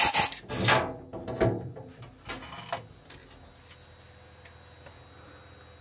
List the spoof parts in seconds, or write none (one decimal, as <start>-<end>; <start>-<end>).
none